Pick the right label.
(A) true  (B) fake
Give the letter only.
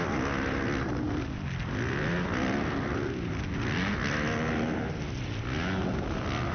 A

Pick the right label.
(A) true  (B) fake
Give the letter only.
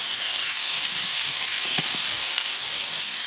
B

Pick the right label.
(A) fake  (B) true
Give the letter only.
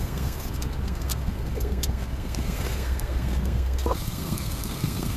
A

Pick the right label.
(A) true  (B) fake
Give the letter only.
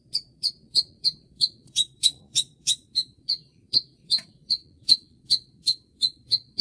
B